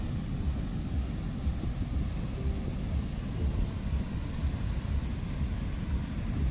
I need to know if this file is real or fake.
real